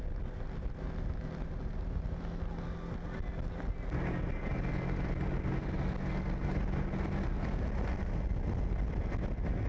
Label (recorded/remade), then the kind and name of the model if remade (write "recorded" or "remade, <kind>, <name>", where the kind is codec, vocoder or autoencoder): recorded